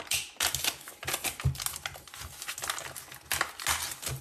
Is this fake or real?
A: real